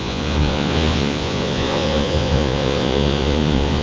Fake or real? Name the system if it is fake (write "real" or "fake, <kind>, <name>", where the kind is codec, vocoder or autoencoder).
fake, vocoder, Vocos